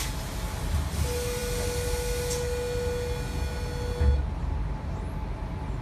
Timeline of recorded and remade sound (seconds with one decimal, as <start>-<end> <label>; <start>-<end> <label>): 0.0-5.8 recorded